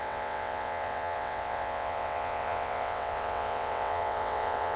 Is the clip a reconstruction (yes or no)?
yes